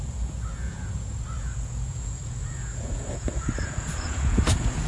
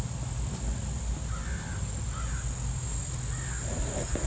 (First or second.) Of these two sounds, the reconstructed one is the first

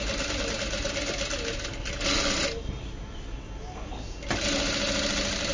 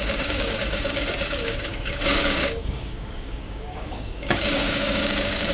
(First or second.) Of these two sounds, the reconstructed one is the second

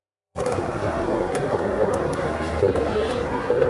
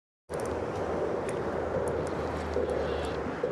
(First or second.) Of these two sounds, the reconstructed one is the first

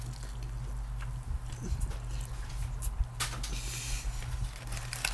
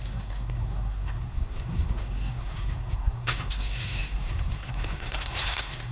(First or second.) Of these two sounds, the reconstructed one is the second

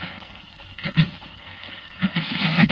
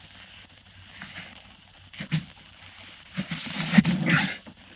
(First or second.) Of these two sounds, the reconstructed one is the first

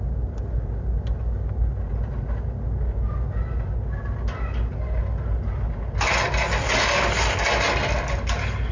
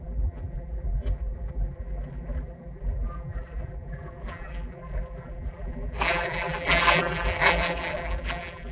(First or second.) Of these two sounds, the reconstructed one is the second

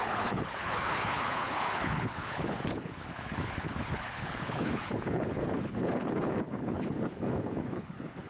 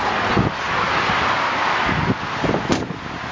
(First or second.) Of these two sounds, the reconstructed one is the first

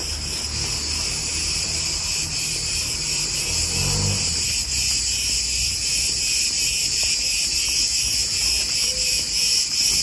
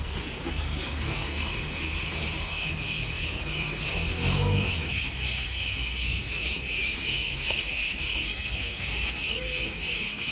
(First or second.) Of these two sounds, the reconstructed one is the second